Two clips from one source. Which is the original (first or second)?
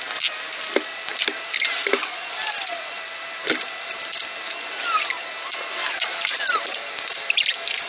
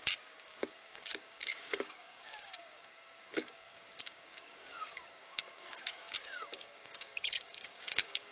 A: first